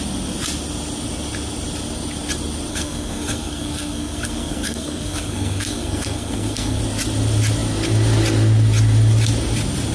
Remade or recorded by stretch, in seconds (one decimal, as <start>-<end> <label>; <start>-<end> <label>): 0.0-2.7 recorded; 2.7-6.8 remade; 6.8-9.9 recorded